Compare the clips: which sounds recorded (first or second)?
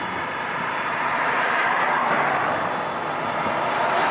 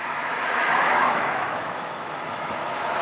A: first